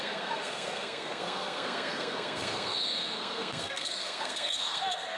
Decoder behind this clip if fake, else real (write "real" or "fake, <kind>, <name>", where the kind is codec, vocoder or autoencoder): fake, codec, SNAC